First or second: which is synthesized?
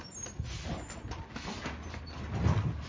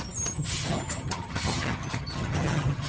second